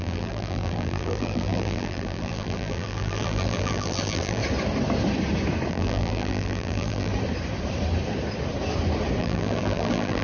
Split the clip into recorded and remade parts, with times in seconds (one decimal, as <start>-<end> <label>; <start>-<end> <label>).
0.0-4.4 remade; 4.4-5.7 recorded; 5.7-7.1 remade; 7.1-9.2 recorded; 9.2-10.2 remade